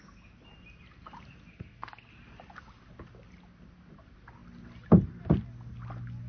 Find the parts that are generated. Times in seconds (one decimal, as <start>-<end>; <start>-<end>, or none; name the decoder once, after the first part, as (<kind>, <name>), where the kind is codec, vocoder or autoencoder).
1.5-2.1 (codec, SNAC)